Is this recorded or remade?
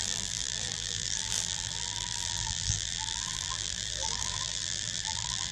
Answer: remade